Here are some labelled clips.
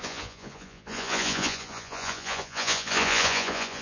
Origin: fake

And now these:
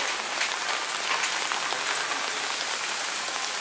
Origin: real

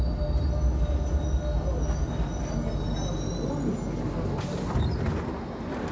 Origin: real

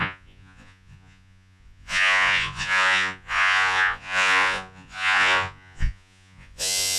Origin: fake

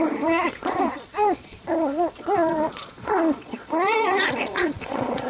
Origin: fake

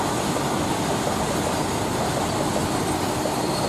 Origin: real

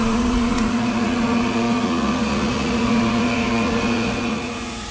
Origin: fake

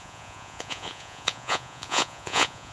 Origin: fake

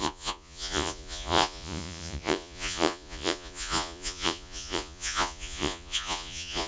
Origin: fake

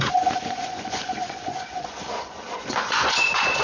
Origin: fake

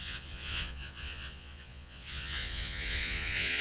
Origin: fake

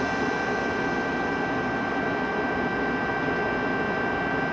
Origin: real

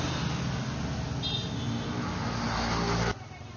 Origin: real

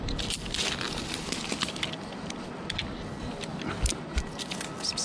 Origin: real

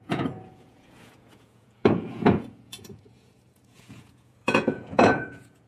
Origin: fake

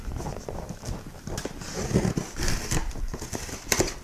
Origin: real